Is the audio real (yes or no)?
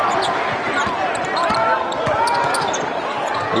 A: yes